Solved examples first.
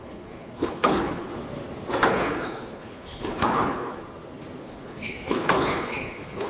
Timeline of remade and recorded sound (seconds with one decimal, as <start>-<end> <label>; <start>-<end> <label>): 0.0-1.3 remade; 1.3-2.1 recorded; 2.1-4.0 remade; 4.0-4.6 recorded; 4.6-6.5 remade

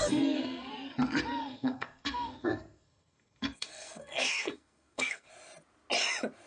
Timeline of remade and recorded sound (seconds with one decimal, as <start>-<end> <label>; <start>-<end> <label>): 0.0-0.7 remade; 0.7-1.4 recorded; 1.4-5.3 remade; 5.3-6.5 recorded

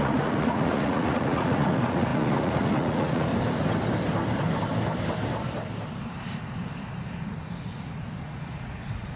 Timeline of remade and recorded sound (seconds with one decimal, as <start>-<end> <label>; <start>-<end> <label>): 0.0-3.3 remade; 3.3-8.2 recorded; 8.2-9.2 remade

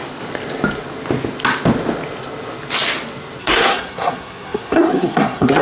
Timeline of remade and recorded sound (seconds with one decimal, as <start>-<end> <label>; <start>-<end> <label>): 0.0-3.4 recorded; 3.4-5.6 remade